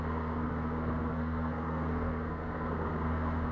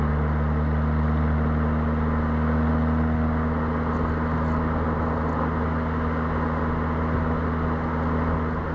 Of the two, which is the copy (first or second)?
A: first